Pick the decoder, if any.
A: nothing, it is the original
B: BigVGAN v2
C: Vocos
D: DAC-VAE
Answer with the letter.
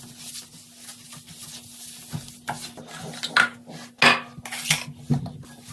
A